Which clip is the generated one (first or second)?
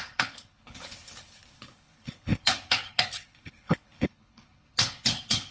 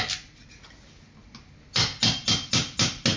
first